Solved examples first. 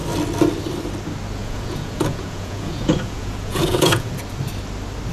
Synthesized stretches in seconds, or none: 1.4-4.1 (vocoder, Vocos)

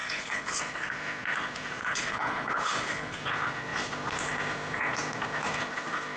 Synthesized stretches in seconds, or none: 0.0-0.6 (codec, HILCodec); 1.8-3.2

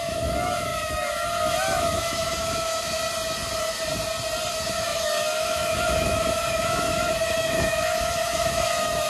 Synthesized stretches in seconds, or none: 0.0-3.0 (autoencoder, DAC-VAE); 4.5-9.1

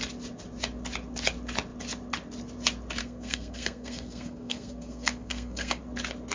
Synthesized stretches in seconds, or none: 3.0-5.8 (codec, SNAC)

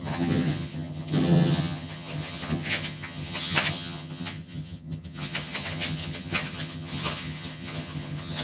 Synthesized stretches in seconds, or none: 0.0-8.4 (vocoder, HiFi-GAN)

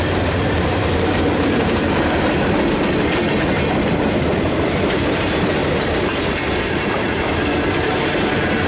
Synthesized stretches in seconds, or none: 0.0-2.8 (vocoder, BigVGAN v2); 4.0-5.6; 6.7-8.7

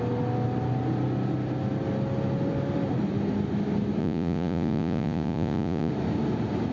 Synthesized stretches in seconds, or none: 4.0-5.9 (vocoder, Vocos)